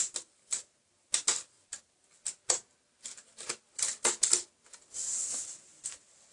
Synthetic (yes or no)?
no